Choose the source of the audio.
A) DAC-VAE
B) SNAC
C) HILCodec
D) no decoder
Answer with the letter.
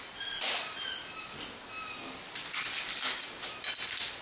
D